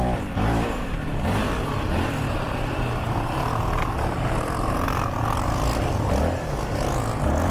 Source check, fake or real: real